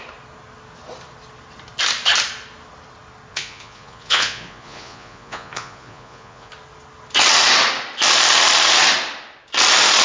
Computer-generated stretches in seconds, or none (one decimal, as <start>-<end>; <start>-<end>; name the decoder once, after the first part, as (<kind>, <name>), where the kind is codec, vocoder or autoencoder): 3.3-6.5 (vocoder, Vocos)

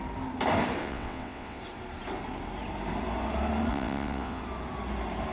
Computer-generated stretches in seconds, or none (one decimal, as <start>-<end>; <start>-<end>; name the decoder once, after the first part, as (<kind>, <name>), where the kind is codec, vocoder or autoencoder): 0.8-1.6 (vocoder, WaveNeXt); 3.7-4.4

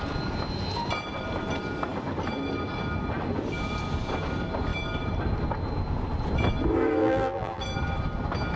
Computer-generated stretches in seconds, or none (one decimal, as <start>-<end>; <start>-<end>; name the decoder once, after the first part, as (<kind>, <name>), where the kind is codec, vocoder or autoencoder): 7.0-7.6 (vocoder, BigVGAN v2)

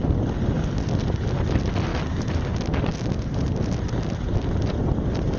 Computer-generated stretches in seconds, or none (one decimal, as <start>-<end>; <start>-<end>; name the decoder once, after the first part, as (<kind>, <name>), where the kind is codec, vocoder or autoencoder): none

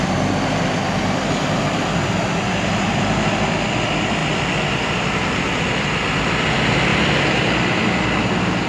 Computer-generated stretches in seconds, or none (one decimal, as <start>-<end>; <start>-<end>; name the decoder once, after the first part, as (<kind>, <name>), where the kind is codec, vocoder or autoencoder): none

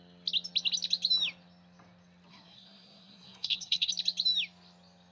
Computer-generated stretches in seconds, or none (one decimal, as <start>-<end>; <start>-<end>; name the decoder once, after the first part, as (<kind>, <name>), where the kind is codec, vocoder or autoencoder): 2.3-3.9 (codec, SNAC)

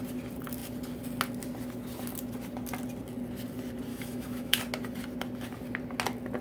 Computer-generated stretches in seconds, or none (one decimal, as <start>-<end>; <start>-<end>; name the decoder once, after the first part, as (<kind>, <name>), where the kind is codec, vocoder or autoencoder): 3.9-4.6 (autoencoder, DAC-VAE)

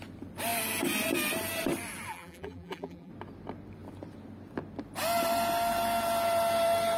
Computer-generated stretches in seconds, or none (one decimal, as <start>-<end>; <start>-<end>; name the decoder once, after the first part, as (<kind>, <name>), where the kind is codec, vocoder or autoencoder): 2.1-3.1 (vocoder, BigVGAN v2)